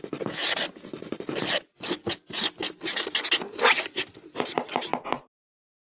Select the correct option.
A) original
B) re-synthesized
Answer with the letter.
A